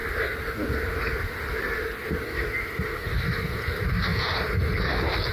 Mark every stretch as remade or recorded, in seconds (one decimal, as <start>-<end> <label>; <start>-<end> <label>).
0.0-5.3 recorded